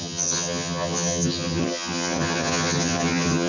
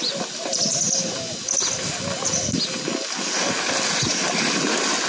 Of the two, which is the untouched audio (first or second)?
second